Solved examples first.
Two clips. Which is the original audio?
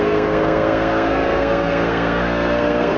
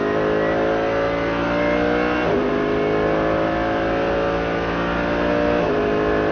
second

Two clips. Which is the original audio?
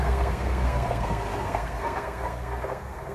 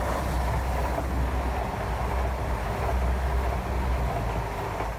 second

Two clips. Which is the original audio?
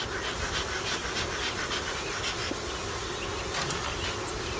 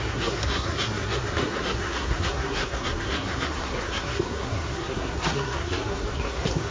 first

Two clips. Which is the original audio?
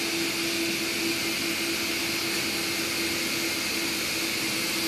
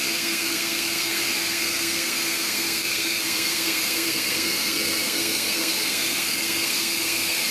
first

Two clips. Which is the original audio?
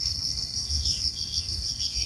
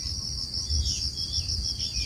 second